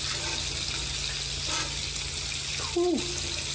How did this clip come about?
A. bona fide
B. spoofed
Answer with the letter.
A